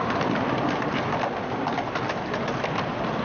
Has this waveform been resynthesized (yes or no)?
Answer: no